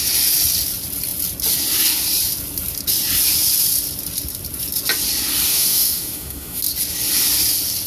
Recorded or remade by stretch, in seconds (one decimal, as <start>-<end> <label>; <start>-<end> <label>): 0.0-5.5 recorded; 5.5-6.6 remade; 6.6-7.9 recorded